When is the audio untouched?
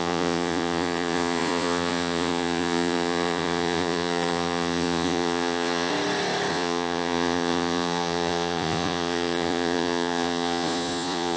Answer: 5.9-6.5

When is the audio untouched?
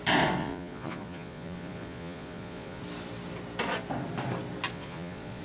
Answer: 0.0-0.4; 2.8-4.7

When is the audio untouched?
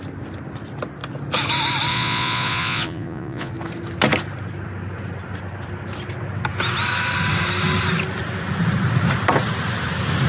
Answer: 0.0-1.9; 3.5-10.3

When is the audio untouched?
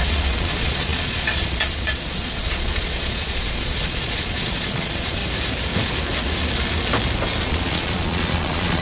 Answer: 5.2-7.4